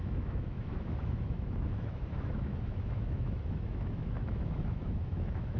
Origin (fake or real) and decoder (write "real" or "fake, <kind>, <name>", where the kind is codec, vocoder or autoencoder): fake, autoencoder, DAC-VAE